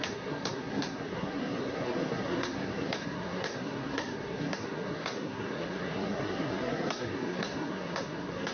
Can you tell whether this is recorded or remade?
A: remade